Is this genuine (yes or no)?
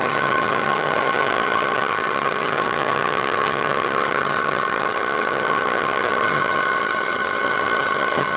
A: no